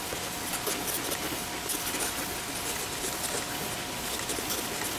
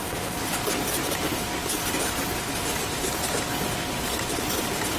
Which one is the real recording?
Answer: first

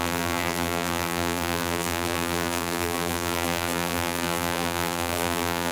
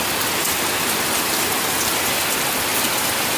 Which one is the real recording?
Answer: second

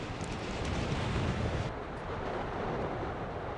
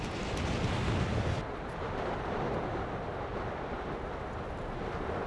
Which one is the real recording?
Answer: second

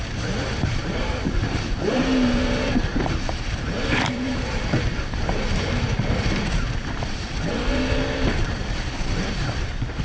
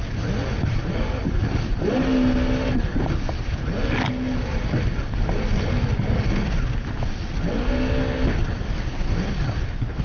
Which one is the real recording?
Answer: second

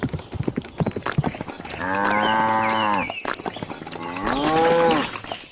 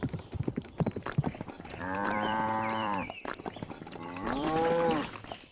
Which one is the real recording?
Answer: first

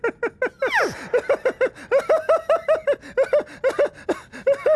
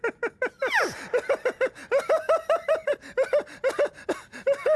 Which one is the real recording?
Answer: first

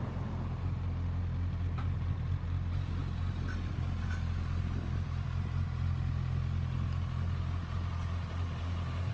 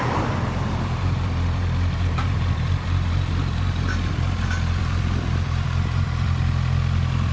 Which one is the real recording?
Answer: first